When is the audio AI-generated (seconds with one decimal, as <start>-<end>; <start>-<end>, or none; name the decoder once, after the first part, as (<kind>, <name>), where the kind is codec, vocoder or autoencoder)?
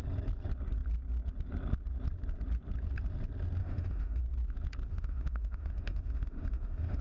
3.6-4.2 (autoencoder, DAC-VAE); 4.9-7.0